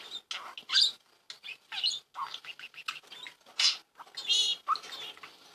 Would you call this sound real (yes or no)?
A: yes